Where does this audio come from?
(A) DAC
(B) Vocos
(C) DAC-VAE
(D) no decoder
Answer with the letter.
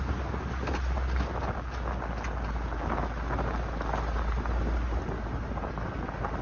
D